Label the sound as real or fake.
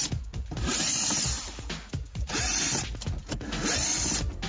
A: real